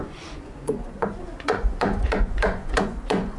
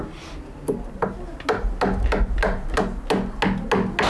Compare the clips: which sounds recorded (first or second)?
second